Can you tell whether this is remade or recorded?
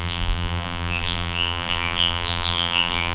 remade